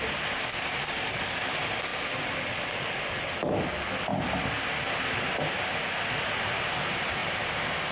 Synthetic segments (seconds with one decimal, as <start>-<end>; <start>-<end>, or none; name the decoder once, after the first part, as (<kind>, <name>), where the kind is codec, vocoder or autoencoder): none